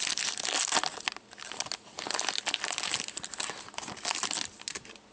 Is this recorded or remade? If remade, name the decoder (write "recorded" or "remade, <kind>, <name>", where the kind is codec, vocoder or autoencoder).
recorded